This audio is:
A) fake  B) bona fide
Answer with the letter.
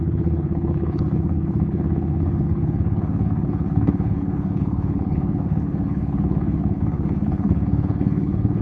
A